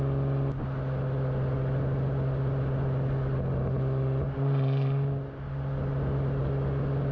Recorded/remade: recorded